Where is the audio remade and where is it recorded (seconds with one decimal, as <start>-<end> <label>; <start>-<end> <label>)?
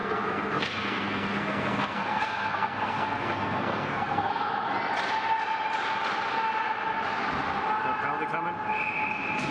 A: 0.0-4.3 remade; 4.3-9.5 recorded